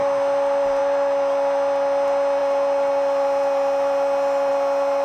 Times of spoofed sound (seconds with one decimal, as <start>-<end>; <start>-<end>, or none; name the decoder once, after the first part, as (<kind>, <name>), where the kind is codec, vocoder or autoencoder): none